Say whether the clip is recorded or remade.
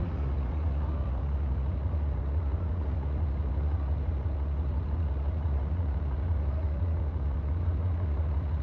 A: remade